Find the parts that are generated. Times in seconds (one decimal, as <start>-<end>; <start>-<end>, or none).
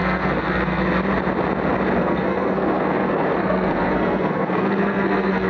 0.0-0.8; 2.0-5.5